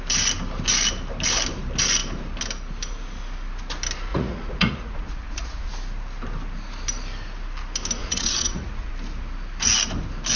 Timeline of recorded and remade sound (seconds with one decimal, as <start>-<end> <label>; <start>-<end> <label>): 0.0-4.1 recorded; 4.1-5.7 remade; 5.7-8.0 recorded; 8.0-8.9 remade; 8.9-10.4 recorded